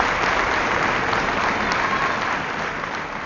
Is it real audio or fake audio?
real